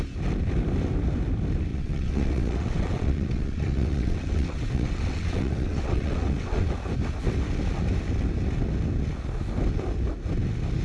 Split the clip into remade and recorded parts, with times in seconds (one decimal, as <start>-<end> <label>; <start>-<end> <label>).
0.0-1.7 recorded; 1.7-6.7 remade; 6.7-10.8 recorded